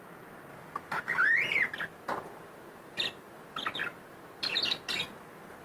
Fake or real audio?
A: real